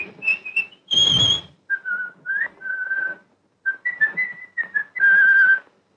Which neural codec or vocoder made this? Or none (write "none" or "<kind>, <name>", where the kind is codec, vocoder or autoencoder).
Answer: none